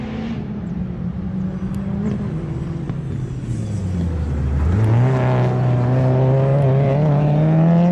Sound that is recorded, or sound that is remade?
recorded